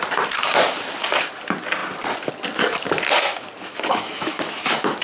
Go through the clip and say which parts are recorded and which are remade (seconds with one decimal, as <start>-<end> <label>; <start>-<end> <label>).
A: 0.0-3.7 recorded; 3.7-5.0 remade